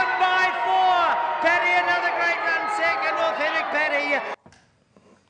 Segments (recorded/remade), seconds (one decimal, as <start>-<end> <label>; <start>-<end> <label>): 0.0-5.3 recorded